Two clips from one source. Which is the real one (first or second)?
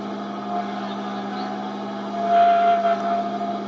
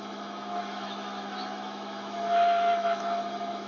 first